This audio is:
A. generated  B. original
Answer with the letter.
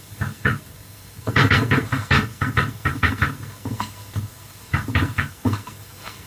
A